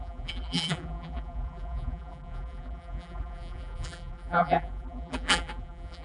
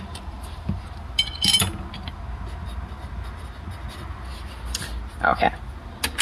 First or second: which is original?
second